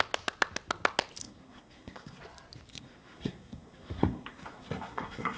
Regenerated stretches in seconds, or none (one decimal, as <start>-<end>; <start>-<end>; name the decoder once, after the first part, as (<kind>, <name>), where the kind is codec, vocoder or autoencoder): 1.2-2.2 (codec, SNAC); 2.7-5.4